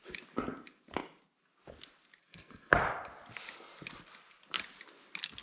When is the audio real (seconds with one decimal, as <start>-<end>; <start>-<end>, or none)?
0.0-2.2; 2.7-5.4